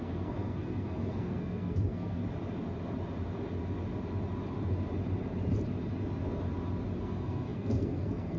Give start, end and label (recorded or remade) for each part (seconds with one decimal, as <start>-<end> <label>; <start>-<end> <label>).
0.0-2.2 remade; 2.2-7.0 recorded; 7.0-8.4 remade